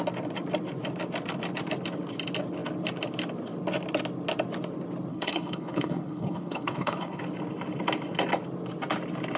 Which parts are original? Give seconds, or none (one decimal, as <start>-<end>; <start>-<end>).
0.0-5.1; 7.2-9.4